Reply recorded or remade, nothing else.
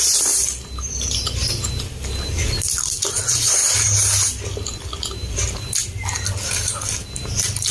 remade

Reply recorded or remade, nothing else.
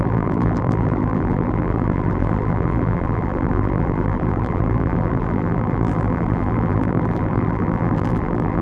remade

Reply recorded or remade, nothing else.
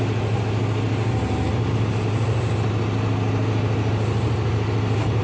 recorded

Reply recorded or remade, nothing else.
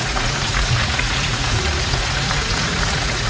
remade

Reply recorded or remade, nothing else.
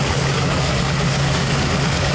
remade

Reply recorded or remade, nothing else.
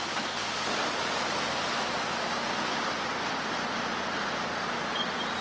recorded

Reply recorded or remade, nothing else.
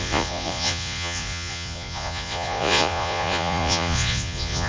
remade